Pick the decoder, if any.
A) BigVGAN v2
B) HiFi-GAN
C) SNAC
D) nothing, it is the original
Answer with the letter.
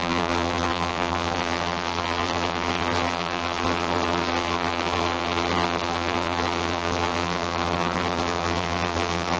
A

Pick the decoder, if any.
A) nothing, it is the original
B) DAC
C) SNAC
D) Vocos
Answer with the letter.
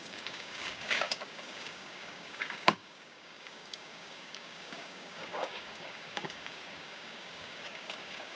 B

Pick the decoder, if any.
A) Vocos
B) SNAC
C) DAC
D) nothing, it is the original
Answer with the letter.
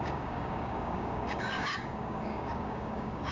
C